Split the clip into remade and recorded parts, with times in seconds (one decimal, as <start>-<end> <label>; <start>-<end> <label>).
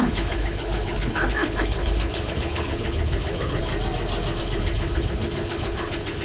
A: 0.0-3.7 remade; 3.7-4.4 recorded; 4.4-6.2 remade